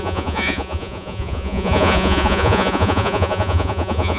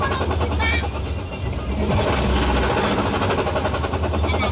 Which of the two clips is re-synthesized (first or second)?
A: first